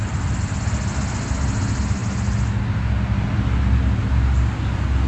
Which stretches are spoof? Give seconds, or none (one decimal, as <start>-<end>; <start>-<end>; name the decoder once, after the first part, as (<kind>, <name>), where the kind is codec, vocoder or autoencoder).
none